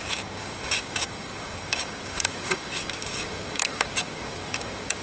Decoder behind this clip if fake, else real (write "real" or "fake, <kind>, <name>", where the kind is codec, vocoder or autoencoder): fake, codec, DAC